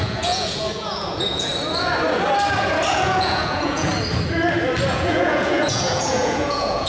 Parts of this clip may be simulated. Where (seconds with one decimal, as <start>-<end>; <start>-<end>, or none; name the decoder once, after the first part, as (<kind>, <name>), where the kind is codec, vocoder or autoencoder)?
0.0-1.5 (vocoder, Vocos); 2.9-3.9; 4.9-6.9